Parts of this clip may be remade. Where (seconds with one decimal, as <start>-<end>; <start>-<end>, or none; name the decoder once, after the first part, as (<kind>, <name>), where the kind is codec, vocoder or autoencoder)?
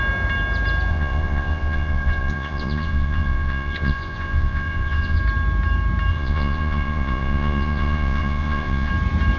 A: 0.9-5.2 (vocoder, Vocos); 6.1-8.9